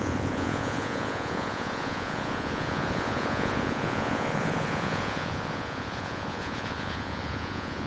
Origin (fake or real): fake